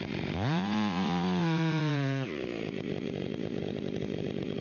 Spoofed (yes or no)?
yes